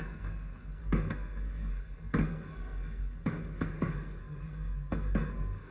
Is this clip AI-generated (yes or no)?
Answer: yes